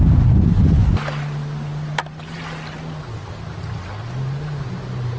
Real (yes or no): yes